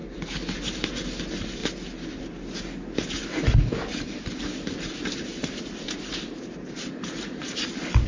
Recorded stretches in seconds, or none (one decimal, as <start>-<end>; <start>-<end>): 0.9-3.8; 7.4-8.1